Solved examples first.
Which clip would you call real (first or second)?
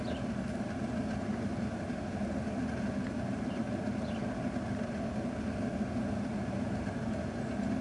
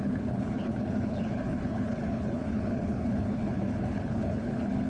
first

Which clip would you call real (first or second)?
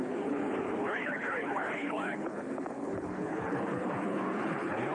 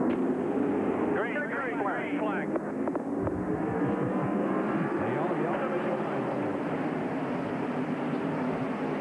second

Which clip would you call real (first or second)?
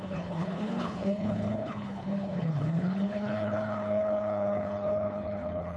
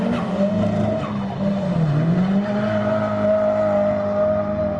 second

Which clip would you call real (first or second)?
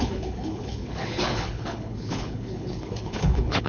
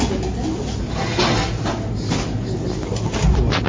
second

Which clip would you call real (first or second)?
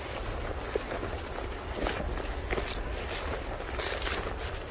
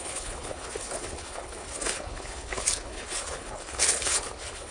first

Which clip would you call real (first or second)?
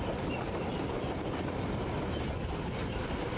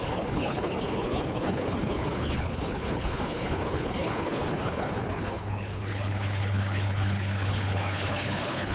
first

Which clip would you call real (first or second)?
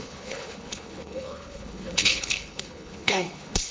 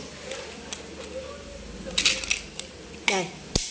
second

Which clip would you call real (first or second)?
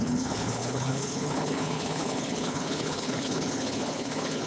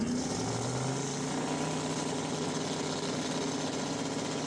second